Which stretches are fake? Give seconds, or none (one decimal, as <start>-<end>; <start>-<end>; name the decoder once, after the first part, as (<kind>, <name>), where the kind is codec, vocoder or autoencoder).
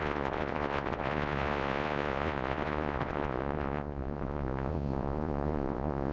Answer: 0.0-6.1 (vocoder, Vocos)